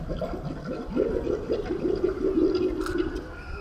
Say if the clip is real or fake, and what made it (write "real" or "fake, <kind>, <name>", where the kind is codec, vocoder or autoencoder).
real